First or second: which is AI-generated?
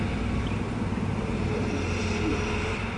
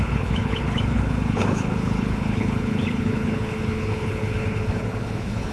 second